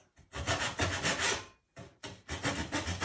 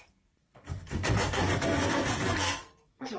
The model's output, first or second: second